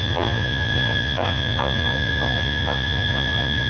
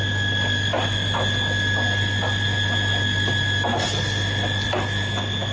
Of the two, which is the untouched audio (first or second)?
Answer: second